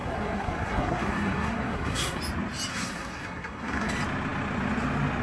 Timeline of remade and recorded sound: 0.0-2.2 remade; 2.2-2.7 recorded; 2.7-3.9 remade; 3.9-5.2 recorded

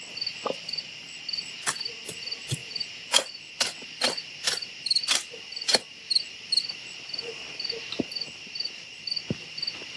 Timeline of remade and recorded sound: 0.0-2.6 recorded; 2.6-3.3 remade; 3.3-10.0 recorded

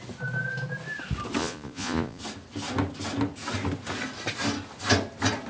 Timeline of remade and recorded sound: 0.0-1.4 recorded; 1.4-2.2 remade; 2.2-5.5 recorded

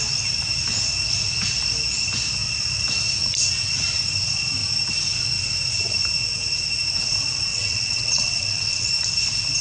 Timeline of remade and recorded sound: 0.0-7.5 recorded; 7.5-8.9 remade; 8.9-9.6 recorded

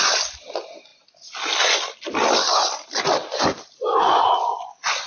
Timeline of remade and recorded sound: 0.0-5.1 recorded

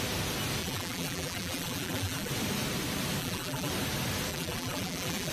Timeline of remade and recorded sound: 0.0-0.6 recorded; 0.6-2.3 remade; 2.3-3.2 recorded; 3.2-3.7 remade; 3.7-4.3 recorded; 4.3-5.3 remade

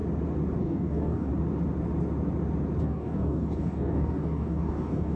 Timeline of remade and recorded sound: 0.0-0.6 recorded; 0.6-1.3 remade; 1.3-2.8 recorded; 2.8-5.2 remade